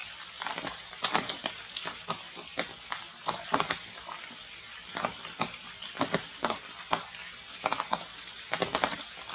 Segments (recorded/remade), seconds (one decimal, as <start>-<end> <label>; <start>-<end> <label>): 0.0-9.3 recorded